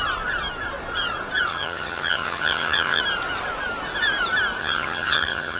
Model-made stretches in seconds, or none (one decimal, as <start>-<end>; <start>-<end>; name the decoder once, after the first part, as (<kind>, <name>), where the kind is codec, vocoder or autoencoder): 1.5-3.0 (vocoder, HiFi-GAN); 4.6-5.6

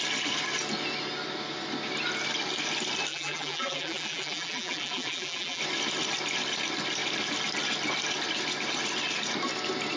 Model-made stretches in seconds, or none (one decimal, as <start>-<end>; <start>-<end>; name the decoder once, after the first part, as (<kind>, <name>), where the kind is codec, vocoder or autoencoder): 3.1-5.6 (vocoder, BigVGAN v2)

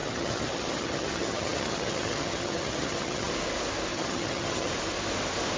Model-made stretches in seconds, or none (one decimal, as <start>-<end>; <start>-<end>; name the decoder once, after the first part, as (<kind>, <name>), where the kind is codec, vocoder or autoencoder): 0.0-3.3 (vocoder, HiFi-GAN); 3.9-4.7